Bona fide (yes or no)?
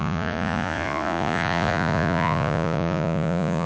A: no